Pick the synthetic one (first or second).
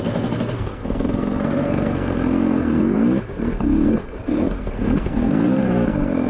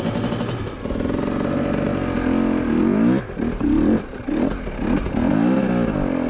first